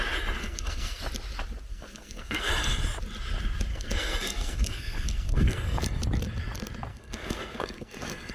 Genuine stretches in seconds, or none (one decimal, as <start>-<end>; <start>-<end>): 0.0-0.4; 1.0-1.7; 2.5-3.7; 5.8-6.9